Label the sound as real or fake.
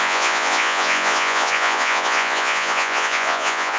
fake